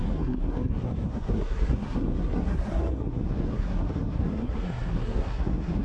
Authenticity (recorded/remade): remade